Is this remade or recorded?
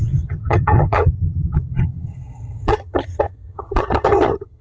remade